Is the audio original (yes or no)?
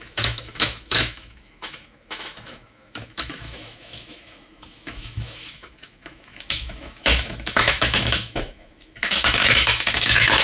no